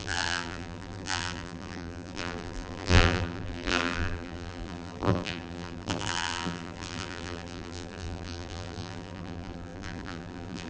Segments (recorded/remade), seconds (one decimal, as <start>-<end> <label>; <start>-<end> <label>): 0.0-10.7 remade